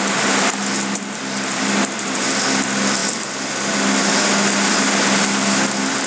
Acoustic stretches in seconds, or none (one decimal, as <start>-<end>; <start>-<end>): 0.0-6.1